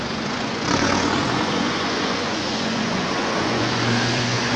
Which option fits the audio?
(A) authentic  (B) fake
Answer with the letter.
B